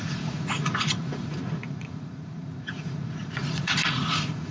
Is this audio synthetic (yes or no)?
yes